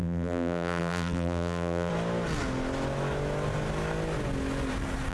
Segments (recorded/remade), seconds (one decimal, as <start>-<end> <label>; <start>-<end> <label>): 0.0-1.9 remade; 1.9-5.1 recorded